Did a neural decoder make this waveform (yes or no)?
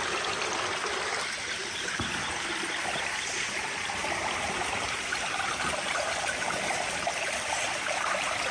yes